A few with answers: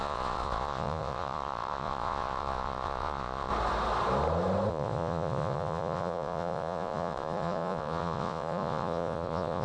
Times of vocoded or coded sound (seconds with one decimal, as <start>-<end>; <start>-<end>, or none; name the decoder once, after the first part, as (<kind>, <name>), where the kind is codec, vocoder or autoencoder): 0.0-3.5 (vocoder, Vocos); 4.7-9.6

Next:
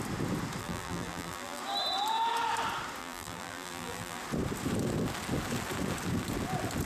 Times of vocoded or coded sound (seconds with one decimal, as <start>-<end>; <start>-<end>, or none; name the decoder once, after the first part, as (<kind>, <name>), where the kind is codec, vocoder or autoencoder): 0.6-1.6 (vocoder, BigVGAN v2); 3.0-4.2

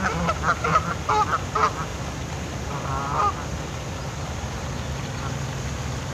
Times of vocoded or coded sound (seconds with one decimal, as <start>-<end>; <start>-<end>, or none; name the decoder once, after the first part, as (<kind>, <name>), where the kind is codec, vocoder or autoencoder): 1.9-2.8 (vocoder, BigVGAN v2)